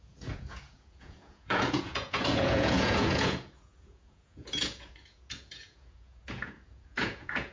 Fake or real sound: fake